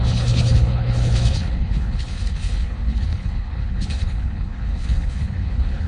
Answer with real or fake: fake